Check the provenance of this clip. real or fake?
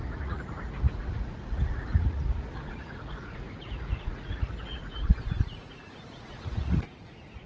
fake